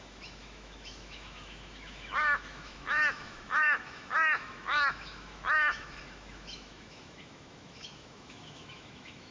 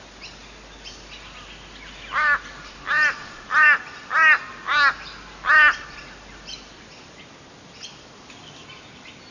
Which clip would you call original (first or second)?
second